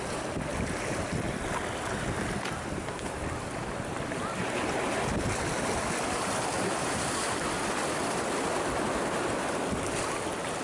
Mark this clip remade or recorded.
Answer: recorded